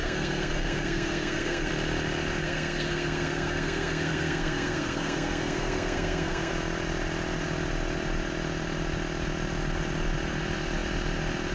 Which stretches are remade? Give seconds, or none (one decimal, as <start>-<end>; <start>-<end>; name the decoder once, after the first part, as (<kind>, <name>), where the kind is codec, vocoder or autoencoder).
0.0-1.7 (codec, SNAC); 2.4-6.5